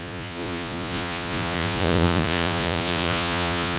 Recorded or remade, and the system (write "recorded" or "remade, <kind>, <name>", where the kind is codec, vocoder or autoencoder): remade, vocoder, Vocos